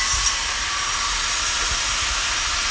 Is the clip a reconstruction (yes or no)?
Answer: no